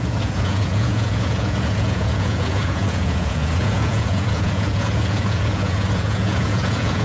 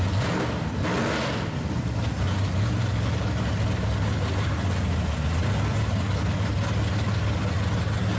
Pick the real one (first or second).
second